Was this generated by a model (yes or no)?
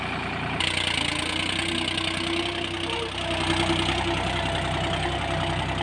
no